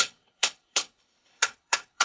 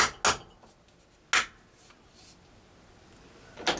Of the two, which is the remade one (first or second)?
first